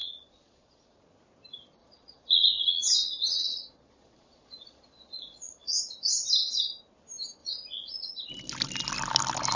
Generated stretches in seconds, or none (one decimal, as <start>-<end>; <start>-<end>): 0.0-1.0; 1.8-5.8; 7.4-8.1